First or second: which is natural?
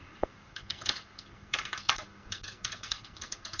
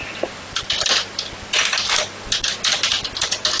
second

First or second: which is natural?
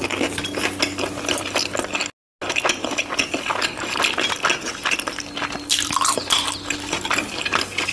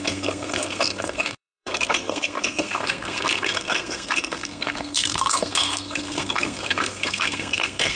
first